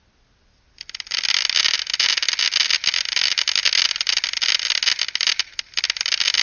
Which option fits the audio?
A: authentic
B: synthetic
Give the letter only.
A